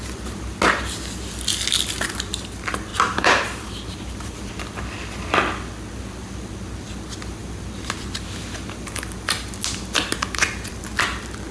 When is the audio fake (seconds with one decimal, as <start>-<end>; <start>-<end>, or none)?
2.9-4.4